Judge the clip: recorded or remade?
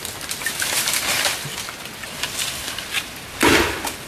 recorded